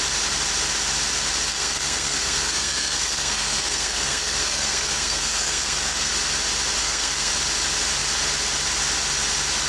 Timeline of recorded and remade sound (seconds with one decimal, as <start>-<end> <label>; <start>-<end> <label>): 0.0-1.5 recorded; 1.5-6.1 remade; 6.1-6.8 recorded; 6.8-7.3 remade; 7.3-9.7 recorded